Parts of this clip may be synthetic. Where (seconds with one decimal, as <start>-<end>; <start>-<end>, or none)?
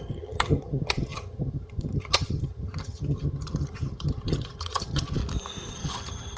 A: 0.0-5.2; 5.7-6.4